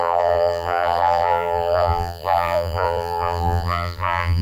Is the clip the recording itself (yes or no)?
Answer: no